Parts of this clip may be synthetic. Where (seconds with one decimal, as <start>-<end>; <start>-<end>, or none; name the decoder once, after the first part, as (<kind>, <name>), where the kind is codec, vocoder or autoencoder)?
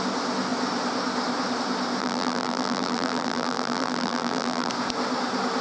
2.0-4.7 (vocoder, BigVGAN v2)